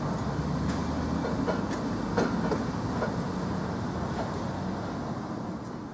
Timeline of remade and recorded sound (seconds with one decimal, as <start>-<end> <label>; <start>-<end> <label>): 0.0-5.9 recorded